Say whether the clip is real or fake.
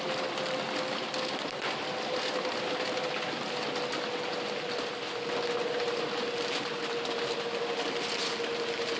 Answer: real